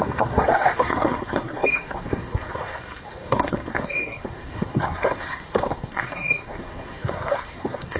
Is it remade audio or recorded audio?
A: remade